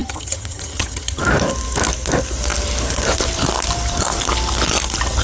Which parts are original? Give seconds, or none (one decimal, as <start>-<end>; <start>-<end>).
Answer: 1.2-5.2